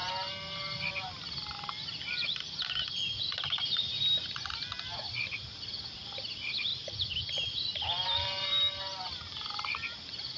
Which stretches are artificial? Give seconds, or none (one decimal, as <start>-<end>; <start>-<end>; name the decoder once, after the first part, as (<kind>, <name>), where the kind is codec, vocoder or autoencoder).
0.0-10.4 (vocoder, BigVGAN v2)